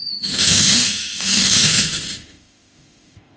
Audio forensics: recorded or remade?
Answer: remade